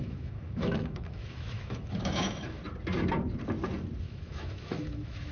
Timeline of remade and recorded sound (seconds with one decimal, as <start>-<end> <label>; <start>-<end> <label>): 0.0-2.6 remade; 2.6-4.0 recorded; 4.0-5.3 remade

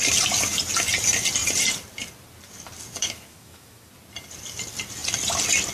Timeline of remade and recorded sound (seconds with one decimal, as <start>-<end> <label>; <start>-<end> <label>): 0.0-3.0 recorded; 3.0-3.9 remade; 3.9-5.7 recorded

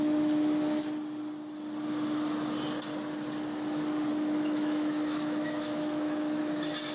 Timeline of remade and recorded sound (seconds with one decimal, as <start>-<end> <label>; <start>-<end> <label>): 0.0-4.1 recorded; 4.1-6.4 remade; 6.4-6.9 recorded

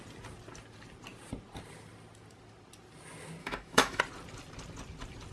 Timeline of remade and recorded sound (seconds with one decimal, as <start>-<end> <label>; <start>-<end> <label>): 0.0-3.4 recorded; 3.4-4.0 remade; 4.0-5.3 recorded

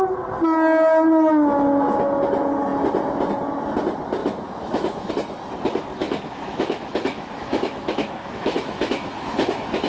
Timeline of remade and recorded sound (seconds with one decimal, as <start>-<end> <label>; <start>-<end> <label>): 0.0-4.2 recorded; 4.2-5.1 remade; 5.1-6.0 recorded; 6.0-9.9 remade

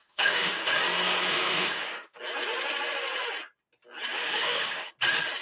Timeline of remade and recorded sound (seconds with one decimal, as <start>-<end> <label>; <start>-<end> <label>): 0.0-0.7 remade; 0.7-1.3 recorded; 1.3-2.2 remade; 2.2-4.1 recorded; 4.1-4.9 remade; 4.9-5.4 recorded

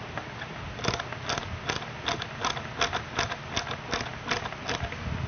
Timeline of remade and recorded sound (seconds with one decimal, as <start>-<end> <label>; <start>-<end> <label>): 0.0-5.3 recorded